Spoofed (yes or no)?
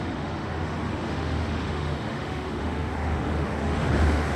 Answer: yes